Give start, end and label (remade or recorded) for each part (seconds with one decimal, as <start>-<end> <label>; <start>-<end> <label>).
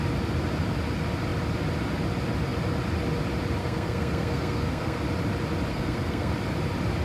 0.0-3.6 recorded; 3.6-5.0 remade; 5.0-5.7 recorded; 5.7-6.3 remade; 6.3-7.0 recorded